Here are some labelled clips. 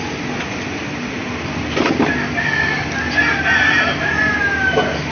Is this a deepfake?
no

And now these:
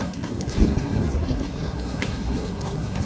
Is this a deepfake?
yes